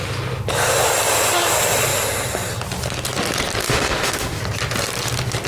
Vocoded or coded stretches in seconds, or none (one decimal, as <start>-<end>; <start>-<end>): 3.6-4.4